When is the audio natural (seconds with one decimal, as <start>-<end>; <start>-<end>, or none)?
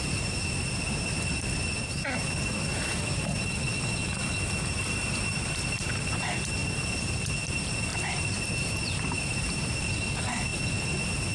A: 0.0-7.9; 9.9-11.3